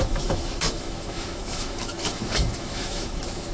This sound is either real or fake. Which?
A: fake